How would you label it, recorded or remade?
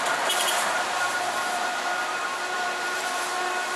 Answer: remade